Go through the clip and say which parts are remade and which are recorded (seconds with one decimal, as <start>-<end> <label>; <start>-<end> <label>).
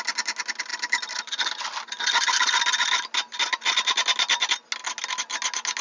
0.0-0.7 recorded; 0.7-2.0 remade; 2.0-5.8 recorded